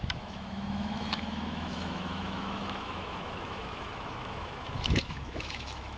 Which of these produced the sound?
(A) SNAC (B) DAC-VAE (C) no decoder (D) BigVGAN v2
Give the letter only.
B